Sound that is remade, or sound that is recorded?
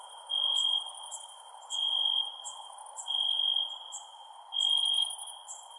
recorded